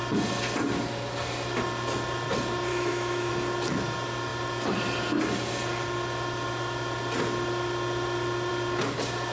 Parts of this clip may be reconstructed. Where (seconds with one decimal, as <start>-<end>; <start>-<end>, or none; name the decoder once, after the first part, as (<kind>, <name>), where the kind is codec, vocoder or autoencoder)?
2.7-3.3 (autoencoder, DAC-VAE)